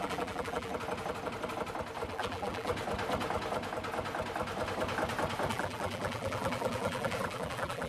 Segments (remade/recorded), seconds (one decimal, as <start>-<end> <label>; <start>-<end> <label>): 0.0-0.7 remade; 0.7-2.1 recorded; 2.1-2.7 remade; 2.7-5.5 recorded; 5.5-7.9 remade